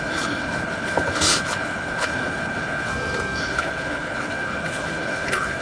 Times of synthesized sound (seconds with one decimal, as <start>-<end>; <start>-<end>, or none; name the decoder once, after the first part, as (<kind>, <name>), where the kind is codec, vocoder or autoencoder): 0.0-2.9 (codec, HILCodec); 3.4-5.6